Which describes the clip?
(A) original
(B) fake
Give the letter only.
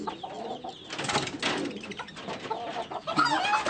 A